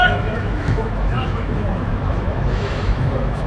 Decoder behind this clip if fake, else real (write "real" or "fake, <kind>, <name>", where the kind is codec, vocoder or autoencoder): fake, autoencoder, DAC-VAE